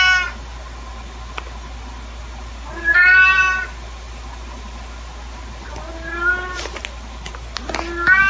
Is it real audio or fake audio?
real